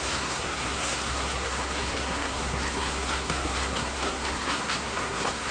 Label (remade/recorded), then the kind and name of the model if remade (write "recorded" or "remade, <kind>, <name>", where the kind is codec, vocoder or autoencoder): remade, codec, SNAC